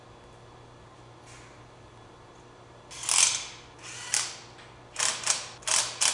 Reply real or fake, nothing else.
real